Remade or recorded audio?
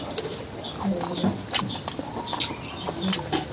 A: recorded